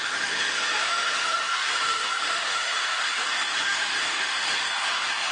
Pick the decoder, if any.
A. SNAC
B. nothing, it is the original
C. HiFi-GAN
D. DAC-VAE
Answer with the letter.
D